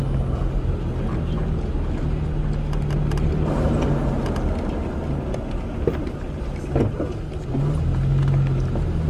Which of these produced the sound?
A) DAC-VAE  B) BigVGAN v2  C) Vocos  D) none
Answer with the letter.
D